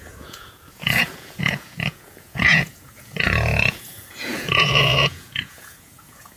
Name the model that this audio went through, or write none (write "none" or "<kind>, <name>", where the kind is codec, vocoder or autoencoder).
vocoder, Vocos